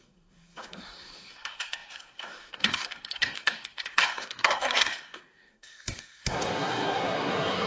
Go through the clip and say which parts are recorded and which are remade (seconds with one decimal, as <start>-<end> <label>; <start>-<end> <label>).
0.0-7.7 remade